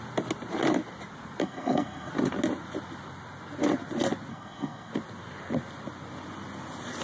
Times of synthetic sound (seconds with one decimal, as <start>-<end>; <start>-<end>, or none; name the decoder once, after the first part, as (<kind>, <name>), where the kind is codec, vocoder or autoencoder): 1.4-2.1 (codec, SNAC); 4.3-4.9